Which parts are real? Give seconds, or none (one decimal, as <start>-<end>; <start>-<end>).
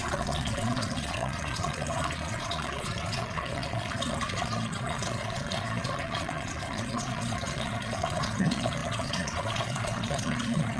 none